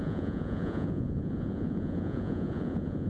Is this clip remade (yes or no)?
yes